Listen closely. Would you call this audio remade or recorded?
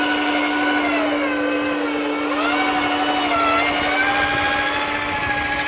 recorded